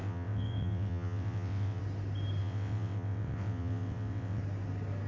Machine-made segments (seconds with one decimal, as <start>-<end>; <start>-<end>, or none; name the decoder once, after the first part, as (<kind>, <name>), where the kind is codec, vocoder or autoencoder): 0.0-1.8 (vocoder, WaveNeXt); 2.4-4.4